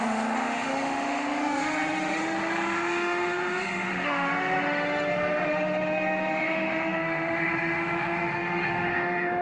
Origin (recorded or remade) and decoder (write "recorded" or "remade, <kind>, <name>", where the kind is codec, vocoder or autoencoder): remade, autoencoder, DAC-VAE